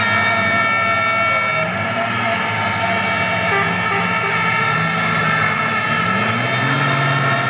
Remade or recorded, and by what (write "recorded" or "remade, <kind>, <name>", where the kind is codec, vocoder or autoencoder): recorded